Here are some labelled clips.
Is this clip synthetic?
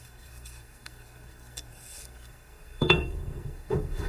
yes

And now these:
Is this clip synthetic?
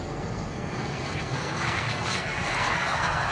yes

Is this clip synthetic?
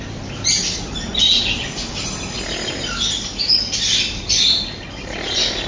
no